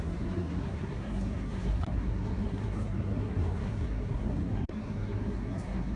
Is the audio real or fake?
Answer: fake